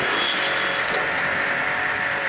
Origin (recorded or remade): recorded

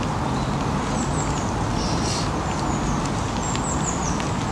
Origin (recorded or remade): recorded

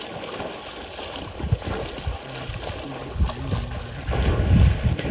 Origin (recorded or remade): recorded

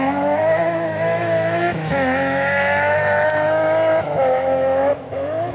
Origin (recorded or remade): remade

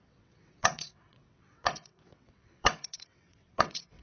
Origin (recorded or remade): remade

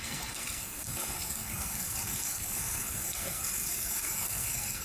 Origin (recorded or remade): remade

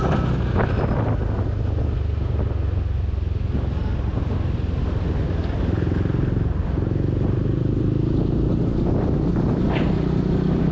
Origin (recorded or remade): recorded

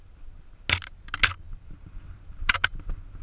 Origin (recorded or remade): recorded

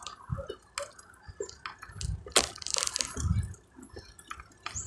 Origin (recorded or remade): recorded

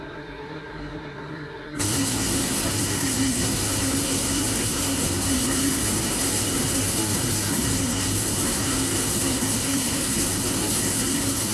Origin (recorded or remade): remade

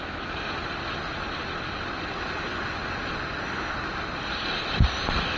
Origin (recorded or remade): recorded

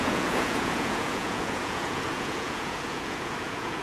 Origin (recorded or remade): remade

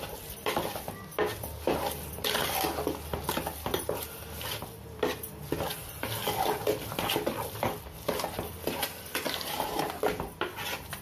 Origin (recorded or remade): recorded